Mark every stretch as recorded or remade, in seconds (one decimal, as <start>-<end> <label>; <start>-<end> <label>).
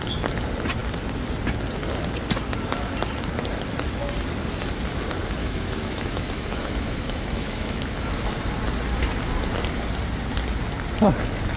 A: 0.0-5.4 recorded; 5.4-7.9 remade; 7.9-11.6 recorded